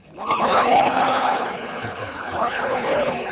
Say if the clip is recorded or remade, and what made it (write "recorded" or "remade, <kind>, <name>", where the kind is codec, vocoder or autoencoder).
remade, codec, HILCodec